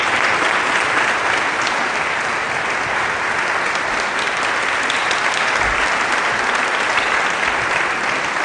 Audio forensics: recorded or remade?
recorded